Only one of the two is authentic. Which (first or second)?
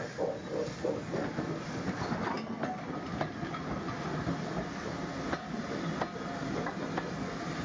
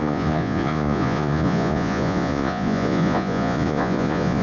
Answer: first